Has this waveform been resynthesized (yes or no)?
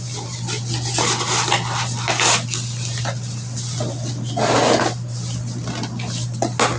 no